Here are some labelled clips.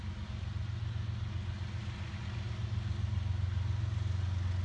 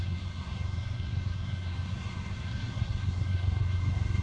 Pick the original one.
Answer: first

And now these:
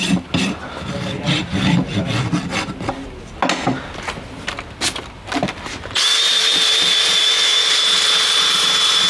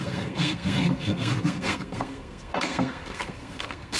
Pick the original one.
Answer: first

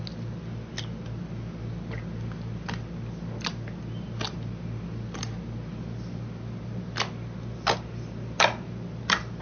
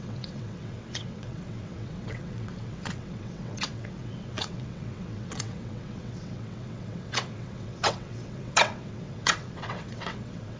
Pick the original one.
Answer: first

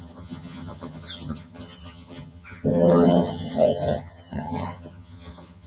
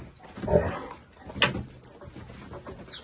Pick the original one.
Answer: second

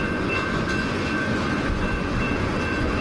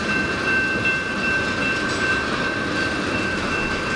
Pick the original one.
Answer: second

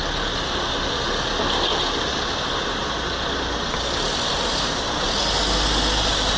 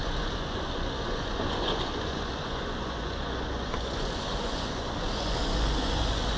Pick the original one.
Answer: first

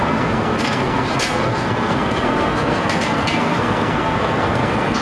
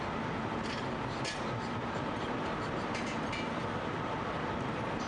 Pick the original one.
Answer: second